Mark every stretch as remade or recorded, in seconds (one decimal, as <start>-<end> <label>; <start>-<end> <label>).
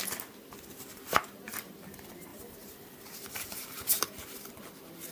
0.0-2.3 recorded; 2.3-4.5 remade; 4.5-5.1 recorded